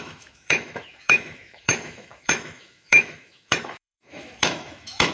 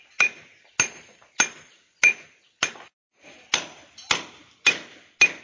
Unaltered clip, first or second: second